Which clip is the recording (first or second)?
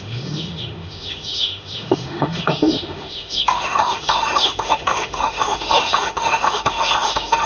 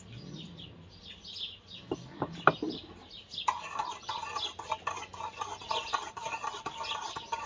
second